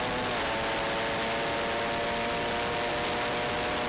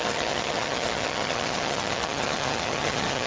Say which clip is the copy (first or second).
second